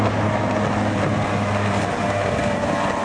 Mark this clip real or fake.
real